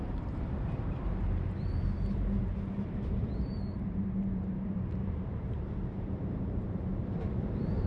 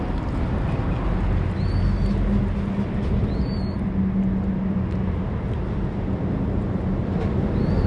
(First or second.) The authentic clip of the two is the second